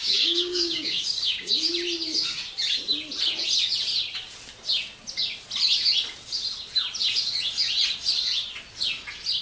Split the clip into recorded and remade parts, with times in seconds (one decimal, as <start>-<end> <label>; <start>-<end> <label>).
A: 0.0-1.7 remade; 1.7-9.4 recorded